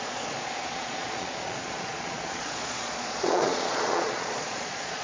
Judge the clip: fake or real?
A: fake